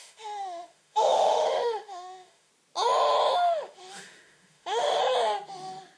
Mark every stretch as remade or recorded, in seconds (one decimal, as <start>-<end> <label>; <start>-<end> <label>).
0.0-2.5 remade; 2.5-3.3 recorded; 3.3-5.0 remade; 5.0-6.0 recorded

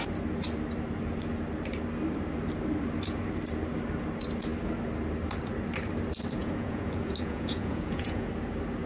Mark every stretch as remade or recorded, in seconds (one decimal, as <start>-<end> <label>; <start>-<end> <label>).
0.0-6.4 recorded; 6.4-8.3 remade; 8.3-8.9 recorded

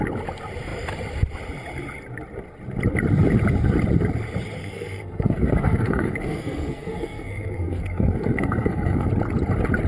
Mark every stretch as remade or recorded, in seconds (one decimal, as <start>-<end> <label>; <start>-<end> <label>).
0.0-4.6 recorded; 4.6-9.1 remade; 9.1-9.9 recorded

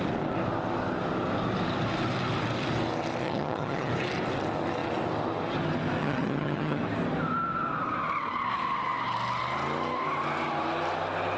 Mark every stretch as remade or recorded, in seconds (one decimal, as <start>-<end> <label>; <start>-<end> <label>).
0.0-3.2 recorded; 3.2-3.9 remade; 3.9-6.0 recorded; 6.0-6.8 remade; 6.8-11.4 recorded

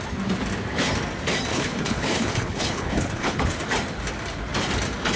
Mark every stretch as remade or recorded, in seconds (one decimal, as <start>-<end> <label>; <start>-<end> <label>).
0.0-1.5 recorded; 1.5-3.6 remade; 3.6-5.2 recorded

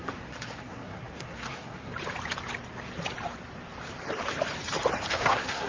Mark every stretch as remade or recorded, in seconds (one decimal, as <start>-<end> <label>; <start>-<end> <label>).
0.0-1.9 remade; 1.9-5.1 recorded; 5.1-5.7 remade

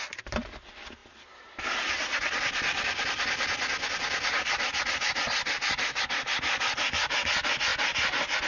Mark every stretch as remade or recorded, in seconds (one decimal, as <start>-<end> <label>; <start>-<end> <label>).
0.0-8.5 recorded